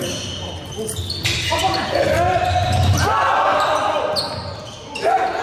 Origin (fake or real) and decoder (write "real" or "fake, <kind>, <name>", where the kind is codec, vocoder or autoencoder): real